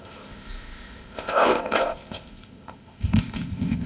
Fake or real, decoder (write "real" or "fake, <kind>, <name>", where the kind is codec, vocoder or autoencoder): fake, codec, ZipCodec